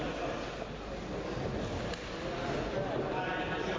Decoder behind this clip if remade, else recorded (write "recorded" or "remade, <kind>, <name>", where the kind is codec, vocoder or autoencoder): recorded